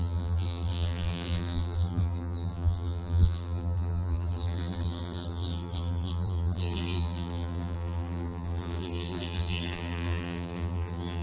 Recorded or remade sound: remade